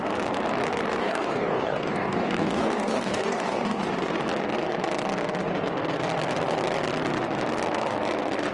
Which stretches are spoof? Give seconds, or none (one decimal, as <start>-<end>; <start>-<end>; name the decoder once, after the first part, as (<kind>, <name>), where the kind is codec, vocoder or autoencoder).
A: 1.0-3.8 (codec, DAC)